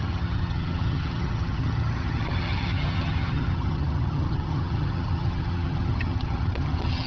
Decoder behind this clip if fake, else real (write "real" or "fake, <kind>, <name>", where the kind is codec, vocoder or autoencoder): fake, vocoder, HiFi-GAN